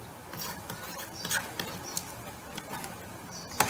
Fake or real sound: real